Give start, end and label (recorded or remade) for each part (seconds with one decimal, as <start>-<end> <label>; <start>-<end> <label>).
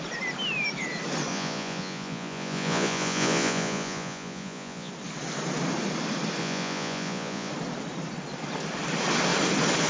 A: 0.0-1.3 recorded; 1.3-4.9 remade; 4.9-6.4 recorded; 6.4-7.5 remade; 7.5-9.9 recorded